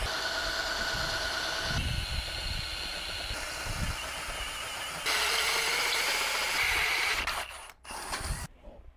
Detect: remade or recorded recorded